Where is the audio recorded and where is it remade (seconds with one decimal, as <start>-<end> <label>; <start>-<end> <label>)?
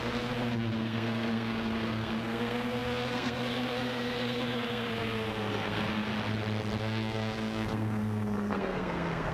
0.0-6.1 remade; 6.1-6.8 recorded; 6.8-9.3 remade